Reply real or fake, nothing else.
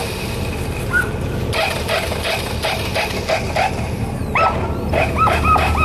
real